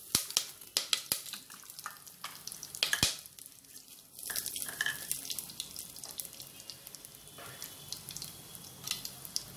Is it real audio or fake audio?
real